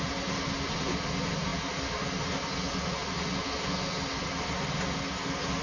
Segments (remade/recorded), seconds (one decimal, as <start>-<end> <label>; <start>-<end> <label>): 0.0-5.6 recorded